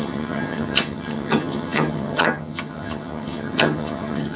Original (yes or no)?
no